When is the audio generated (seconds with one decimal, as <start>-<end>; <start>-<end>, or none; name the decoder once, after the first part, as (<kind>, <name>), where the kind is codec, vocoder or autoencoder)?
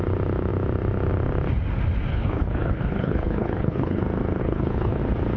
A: 2.1-4.0 (codec, HILCodec); 4.4-5.0